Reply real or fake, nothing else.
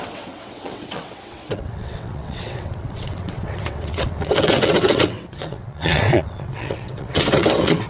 fake